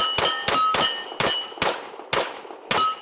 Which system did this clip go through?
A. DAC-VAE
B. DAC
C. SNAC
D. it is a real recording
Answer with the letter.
D